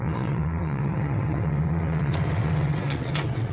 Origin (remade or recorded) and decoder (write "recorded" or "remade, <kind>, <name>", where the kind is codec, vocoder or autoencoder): remade, vocoder, WaveNeXt